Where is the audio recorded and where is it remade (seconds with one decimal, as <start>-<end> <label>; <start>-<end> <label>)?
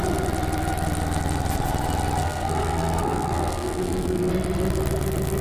0.0-2.2 recorded; 2.2-4.3 remade; 4.3-5.4 recorded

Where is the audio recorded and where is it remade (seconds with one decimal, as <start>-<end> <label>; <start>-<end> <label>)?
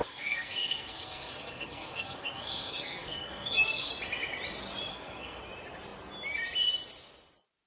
0.0-3.9 remade; 3.9-4.9 recorded; 4.9-5.4 remade; 5.4-7.7 recorded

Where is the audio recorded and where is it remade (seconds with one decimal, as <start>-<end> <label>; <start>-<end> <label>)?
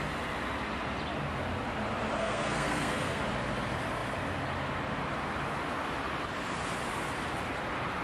0.0-2.2 recorded; 2.2-3.2 remade; 3.2-8.0 recorded